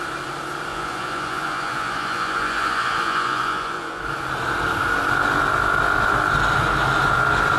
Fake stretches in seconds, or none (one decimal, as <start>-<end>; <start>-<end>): 0.7-4.0